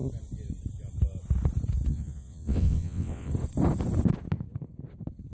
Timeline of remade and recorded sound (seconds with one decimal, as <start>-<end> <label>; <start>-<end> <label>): 0.0-1.9 recorded; 1.9-3.3 remade; 3.3-5.3 recorded

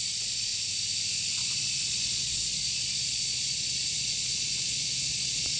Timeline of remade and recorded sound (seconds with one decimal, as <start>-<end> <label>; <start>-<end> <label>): 0.0-0.5 remade; 0.5-1.3 recorded; 1.3-5.6 remade

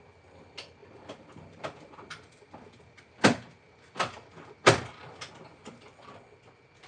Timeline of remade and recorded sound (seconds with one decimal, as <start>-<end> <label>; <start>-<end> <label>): 0.0-0.8 recorded; 0.8-4.9 remade; 4.9-6.9 recorded